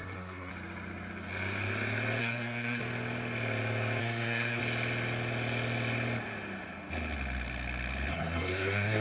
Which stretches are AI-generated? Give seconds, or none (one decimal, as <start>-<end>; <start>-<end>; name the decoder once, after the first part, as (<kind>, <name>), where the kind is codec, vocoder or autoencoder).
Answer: 0.0-0.5 (codec, SNAC); 2.2-2.8; 4.0-4.6; 8.1-9.0